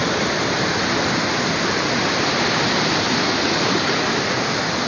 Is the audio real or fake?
real